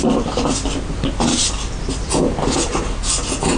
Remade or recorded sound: recorded